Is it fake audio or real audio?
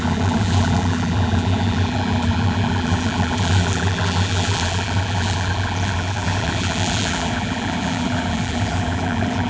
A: fake